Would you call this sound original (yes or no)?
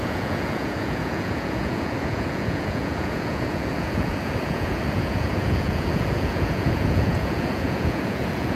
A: no